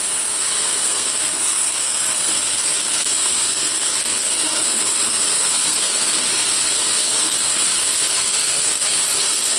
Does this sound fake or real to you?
fake